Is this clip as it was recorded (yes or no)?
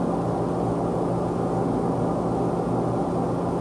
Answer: yes